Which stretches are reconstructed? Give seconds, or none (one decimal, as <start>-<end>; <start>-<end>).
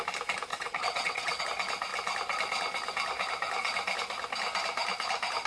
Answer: 0.5-1.4